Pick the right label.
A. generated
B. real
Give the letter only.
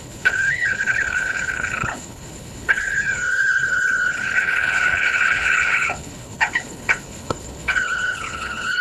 A